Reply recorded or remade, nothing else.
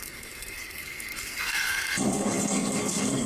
remade